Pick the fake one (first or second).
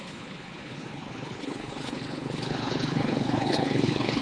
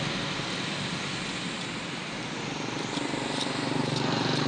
first